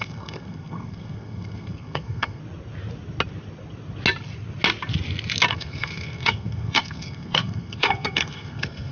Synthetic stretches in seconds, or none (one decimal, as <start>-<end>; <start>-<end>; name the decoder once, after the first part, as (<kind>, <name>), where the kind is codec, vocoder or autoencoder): 0.0-2.4 (codec, SNAC); 5.5-8.9

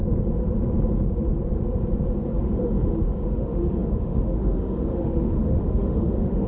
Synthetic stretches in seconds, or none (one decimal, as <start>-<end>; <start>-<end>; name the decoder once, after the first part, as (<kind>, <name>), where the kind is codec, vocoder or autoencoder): 2.4-6.5 (autoencoder, DAC-VAE)

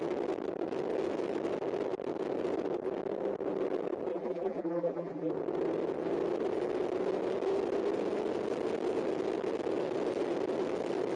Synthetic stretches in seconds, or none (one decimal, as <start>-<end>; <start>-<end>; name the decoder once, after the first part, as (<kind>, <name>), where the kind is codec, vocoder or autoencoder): 4.1-5.3 (vocoder, BigVGAN v2)

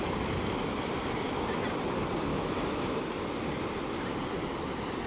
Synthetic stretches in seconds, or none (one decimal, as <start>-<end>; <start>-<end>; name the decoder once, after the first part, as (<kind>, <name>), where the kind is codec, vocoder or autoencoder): 2.3-3.1 (autoencoder, DAC-VAE)

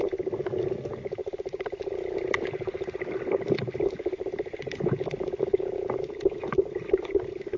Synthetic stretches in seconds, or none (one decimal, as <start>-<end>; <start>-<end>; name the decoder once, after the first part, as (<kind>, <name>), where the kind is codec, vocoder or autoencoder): none

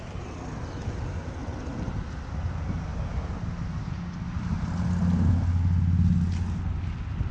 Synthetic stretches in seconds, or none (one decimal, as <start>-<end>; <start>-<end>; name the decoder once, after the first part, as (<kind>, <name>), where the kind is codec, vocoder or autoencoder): none